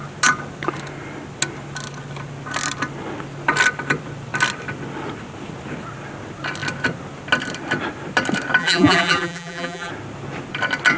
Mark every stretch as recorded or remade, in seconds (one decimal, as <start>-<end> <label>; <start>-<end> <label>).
0.0-8.6 recorded; 8.6-9.9 remade; 9.9-11.0 recorded